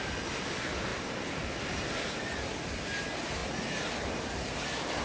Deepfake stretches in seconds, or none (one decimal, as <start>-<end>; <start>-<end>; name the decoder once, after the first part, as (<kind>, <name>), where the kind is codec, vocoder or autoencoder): none